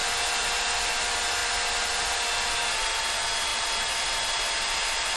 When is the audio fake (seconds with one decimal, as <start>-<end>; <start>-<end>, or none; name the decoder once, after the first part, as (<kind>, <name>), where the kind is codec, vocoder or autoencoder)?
none